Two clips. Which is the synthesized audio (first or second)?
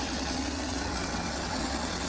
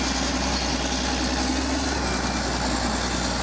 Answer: first